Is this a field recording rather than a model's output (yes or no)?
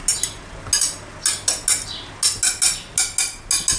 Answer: yes